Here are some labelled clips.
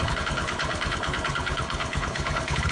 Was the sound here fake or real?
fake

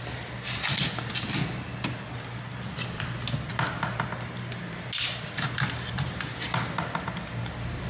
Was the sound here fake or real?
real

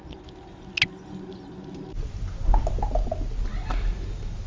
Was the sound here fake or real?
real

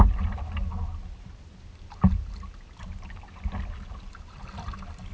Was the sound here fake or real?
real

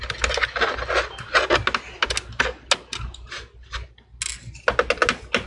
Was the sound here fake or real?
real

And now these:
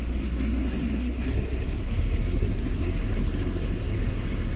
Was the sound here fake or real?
fake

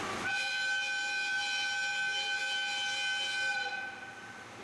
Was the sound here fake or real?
real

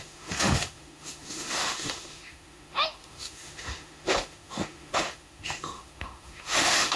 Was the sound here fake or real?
fake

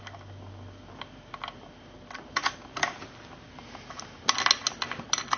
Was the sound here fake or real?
real